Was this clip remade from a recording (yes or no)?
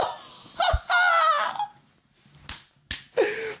no